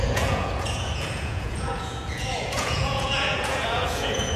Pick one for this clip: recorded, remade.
remade